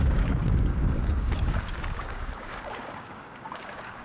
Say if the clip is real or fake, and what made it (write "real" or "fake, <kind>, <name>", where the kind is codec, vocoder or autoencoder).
fake, codec, DAC